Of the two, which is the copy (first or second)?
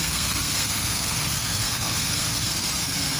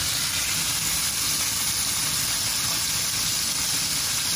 first